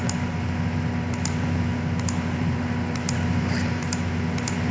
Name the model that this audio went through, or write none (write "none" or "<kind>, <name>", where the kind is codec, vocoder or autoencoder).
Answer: none